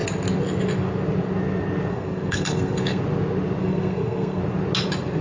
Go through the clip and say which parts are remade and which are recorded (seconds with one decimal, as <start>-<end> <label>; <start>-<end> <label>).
0.0-1.9 recorded; 1.9-3.0 remade; 3.0-3.6 recorded; 3.6-4.4 remade; 4.4-5.2 recorded

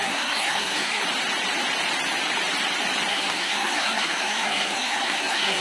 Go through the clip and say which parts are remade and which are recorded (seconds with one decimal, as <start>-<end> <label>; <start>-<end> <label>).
0.0-1.0 remade; 1.0-3.1 recorded; 3.1-5.6 remade

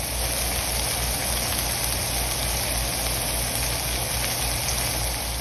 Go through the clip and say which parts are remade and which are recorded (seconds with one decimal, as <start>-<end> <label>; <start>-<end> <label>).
0.0-5.4 recorded

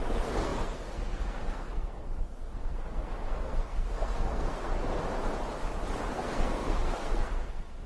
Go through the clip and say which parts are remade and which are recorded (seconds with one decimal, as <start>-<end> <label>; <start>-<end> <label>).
0.0-4.8 remade; 4.8-6.1 recorded; 6.1-7.9 remade